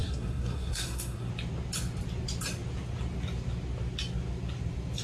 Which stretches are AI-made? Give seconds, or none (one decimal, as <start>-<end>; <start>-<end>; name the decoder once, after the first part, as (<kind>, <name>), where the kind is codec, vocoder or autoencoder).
0.0-1.3 (codec, SNAC)